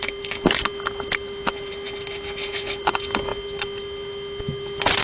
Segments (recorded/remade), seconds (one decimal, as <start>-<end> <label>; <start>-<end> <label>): 0.0-5.0 recorded

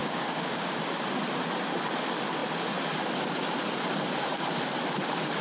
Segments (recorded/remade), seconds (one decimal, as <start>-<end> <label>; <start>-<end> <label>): 0.0-0.8 remade; 0.8-5.4 recorded